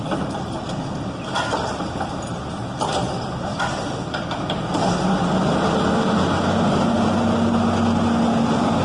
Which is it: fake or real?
real